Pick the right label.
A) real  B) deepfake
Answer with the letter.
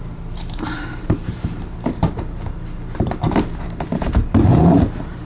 B